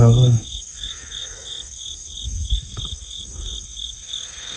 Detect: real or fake fake